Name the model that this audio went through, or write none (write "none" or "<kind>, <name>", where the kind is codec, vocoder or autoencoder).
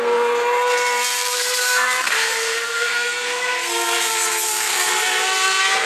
codec, SNAC